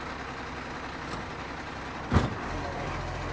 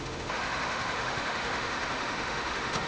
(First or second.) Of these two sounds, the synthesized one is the second